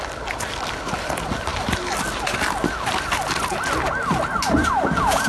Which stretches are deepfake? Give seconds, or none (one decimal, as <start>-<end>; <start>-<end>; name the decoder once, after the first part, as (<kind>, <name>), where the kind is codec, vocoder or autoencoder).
none